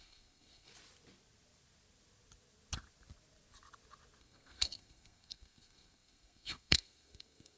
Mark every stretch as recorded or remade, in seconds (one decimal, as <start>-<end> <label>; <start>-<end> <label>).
0.0-0.7 remade; 0.7-4.2 recorded; 4.2-7.6 remade